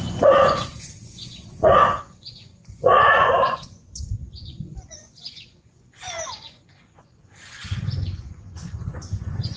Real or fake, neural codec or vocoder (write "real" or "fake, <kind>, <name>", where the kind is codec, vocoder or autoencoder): fake, vocoder, Vocos